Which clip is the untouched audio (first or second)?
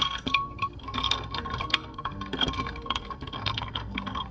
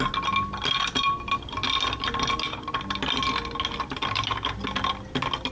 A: second